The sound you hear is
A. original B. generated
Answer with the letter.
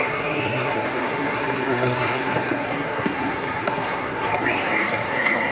B